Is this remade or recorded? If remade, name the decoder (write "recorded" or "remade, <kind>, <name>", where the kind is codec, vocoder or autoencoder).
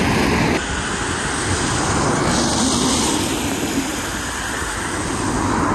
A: recorded